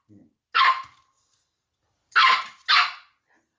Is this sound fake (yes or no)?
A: no